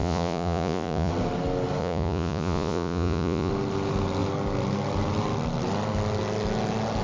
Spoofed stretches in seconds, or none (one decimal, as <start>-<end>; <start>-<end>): 0.0-1.1; 1.8-3.5